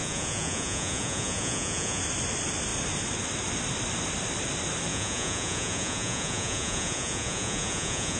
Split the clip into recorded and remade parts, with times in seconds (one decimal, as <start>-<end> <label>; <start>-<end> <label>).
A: 0.0-2.0 remade; 2.0-4.9 recorded; 4.9-8.2 remade